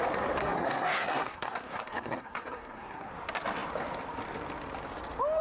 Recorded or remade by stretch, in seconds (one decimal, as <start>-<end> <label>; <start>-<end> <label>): 0.0-0.4 recorded; 0.4-3.1 remade; 3.1-5.4 recorded

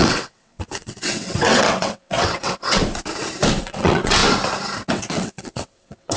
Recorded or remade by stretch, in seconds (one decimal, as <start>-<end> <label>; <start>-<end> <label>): 0.0-2.8 remade; 2.8-3.6 recorded; 3.6-4.2 remade; 4.2-4.9 recorded; 4.9-6.2 remade

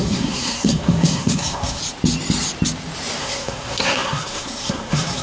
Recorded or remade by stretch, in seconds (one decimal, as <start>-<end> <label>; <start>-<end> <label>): 0.0-1.8 remade; 1.8-3.2 recorded; 3.2-5.2 remade

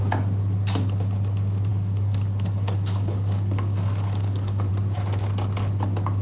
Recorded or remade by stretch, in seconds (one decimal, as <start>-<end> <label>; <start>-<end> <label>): 0.0-1.7 recorded; 1.7-4.7 remade; 4.7-6.2 recorded

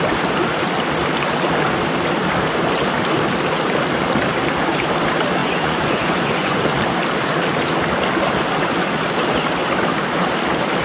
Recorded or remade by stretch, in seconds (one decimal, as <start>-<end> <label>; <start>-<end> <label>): 0.0-5.4 recorded; 5.4-6.7 remade; 6.7-10.8 recorded

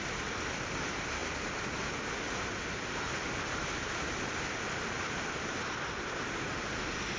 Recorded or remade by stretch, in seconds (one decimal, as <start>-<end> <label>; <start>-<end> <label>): 0.0-7.2 recorded